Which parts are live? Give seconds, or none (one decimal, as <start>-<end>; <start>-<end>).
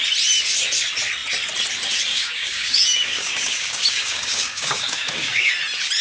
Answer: 0.0-2.1; 5.5-6.0